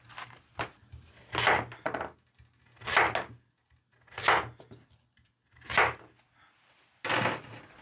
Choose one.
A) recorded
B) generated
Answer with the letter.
A